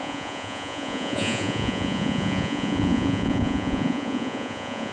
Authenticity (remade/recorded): remade